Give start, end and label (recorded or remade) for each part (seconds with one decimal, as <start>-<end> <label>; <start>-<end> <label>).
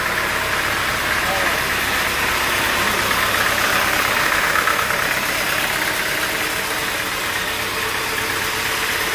0.0-4.2 recorded; 4.2-4.9 remade; 4.9-9.1 recorded